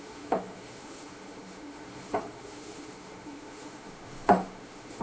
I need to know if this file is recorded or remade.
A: remade